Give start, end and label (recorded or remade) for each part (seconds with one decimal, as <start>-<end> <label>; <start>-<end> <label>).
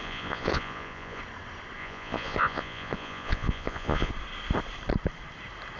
0.0-1.2 remade; 1.2-1.8 recorded; 1.8-4.1 remade; 4.1-5.8 recorded